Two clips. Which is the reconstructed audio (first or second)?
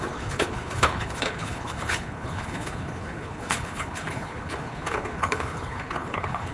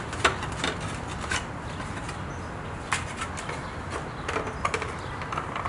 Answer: first